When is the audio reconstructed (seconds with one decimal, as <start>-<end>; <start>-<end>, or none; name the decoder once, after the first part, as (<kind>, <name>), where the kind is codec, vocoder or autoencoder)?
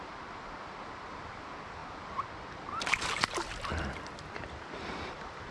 none